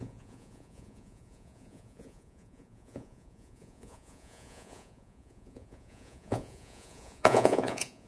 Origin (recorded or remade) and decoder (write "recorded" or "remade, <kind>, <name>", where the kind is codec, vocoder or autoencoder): remade, vocoder, Vocos